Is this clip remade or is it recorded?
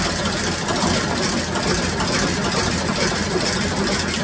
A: recorded